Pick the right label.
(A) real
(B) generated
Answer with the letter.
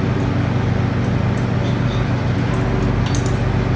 A